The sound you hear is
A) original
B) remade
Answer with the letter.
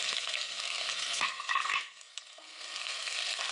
B